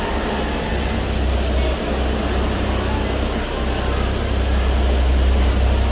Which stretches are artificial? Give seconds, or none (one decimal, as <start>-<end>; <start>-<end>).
none